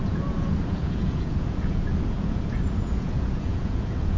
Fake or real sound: fake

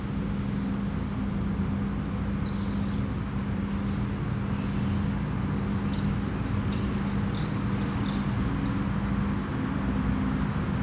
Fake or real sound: real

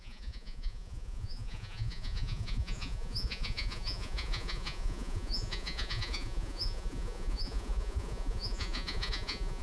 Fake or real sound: fake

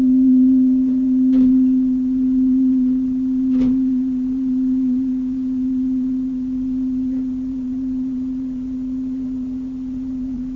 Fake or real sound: fake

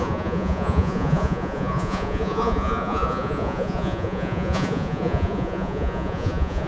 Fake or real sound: fake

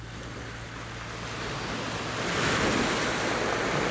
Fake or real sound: real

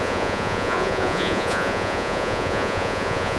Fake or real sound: fake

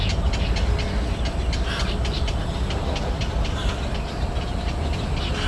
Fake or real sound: real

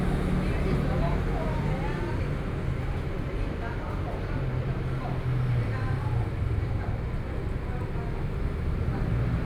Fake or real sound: real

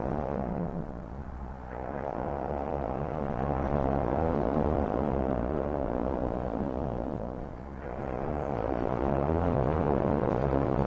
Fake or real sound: fake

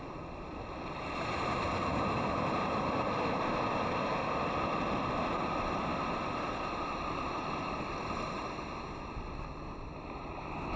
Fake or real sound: real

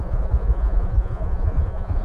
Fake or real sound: fake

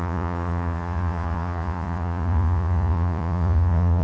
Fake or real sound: fake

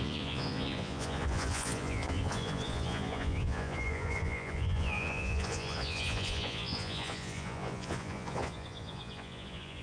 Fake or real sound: fake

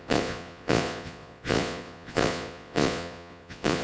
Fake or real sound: fake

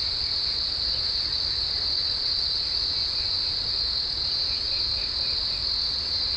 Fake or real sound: real